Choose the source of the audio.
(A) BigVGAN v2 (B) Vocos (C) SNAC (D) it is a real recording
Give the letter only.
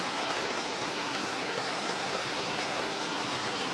C